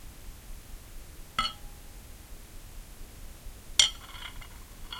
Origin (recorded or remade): recorded